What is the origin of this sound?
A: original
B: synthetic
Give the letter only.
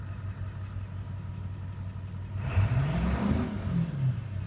A